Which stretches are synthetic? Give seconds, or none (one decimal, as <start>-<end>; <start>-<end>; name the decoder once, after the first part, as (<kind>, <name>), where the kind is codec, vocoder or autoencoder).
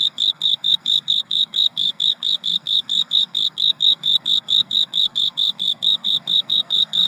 0.0-7.1 (codec, SNAC)